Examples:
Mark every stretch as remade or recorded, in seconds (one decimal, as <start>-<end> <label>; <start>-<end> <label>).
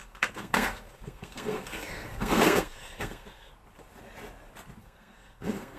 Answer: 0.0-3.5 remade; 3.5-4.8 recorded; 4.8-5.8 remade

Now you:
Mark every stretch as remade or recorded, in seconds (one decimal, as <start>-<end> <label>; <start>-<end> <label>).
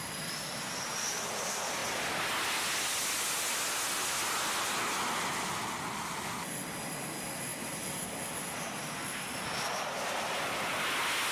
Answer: 0.0-11.3 recorded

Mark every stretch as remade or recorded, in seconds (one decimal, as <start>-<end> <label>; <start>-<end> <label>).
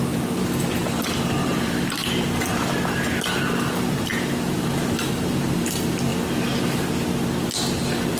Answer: 0.0-2.0 remade; 2.0-3.6 recorded; 3.6-6.1 remade; 6.1-8.2 recorded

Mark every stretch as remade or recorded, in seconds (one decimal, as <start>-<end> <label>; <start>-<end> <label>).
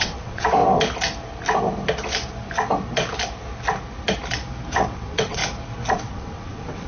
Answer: 0.0-0.6 remade; 0.6-4.7 recorded; 4.7-5.4 remade; 5.4-5.9 recorded; 5.9-6.9 remade